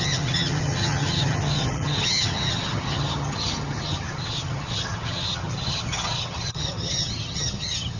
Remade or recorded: remade